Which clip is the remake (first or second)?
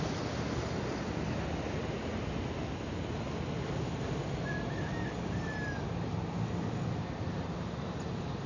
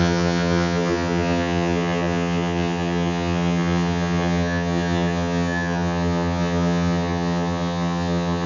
second